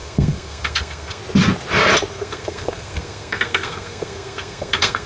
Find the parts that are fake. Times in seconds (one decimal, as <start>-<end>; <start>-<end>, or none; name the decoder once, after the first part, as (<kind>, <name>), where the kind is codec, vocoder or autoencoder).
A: 0.0-1.2 (codec, SNAC); 2.1-5.1